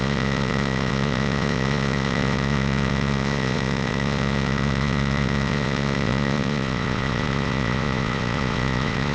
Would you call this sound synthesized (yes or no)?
yes